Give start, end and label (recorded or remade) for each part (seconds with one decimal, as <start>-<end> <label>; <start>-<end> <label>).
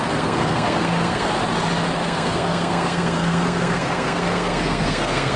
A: 0.0-1.3 remade; 1.3-2.0 recorded; 2.0-5.4 remade